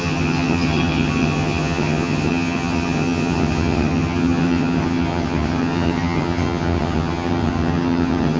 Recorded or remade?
remade